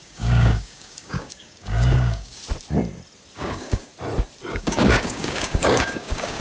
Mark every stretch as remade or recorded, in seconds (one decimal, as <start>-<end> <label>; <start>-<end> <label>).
0.0-2.4 remade; 2.4-3.3 recorded; 3.3-3.9 remade; 3.9-4.5 recorded; 4.5-6.4 remade